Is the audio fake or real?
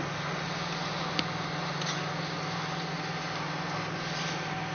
real